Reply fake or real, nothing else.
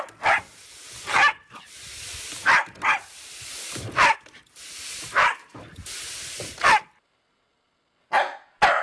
real